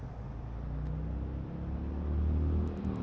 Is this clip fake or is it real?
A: real